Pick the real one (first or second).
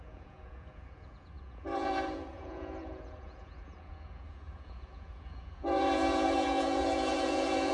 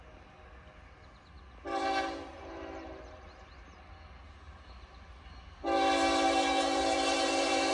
second